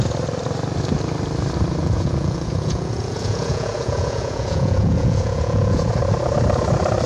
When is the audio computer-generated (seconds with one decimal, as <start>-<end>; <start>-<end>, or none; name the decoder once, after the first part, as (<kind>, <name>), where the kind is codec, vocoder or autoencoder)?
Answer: 1.8-5.9 (vocoder, Vocos)